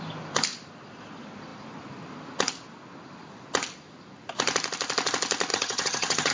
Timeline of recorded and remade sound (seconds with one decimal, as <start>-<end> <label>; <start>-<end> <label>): 0.0-5.5 recorded; 5.5-6.3 remade